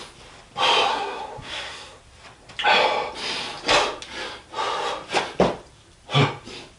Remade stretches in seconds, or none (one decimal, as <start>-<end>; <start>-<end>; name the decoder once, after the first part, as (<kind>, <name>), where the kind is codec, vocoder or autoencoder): 0.9-2.0 (codec, SNAC)